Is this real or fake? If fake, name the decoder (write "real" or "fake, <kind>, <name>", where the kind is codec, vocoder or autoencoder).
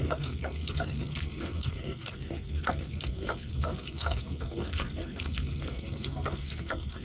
fake, codec, SNAC